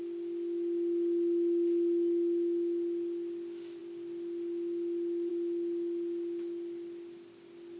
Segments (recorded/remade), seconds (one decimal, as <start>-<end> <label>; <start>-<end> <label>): 0.0-7.8 recorded